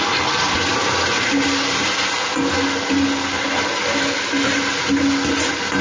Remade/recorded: recorded